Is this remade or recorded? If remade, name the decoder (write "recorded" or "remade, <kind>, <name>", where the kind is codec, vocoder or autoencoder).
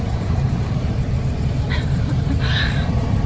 remade, vocoder, BigVGAN v2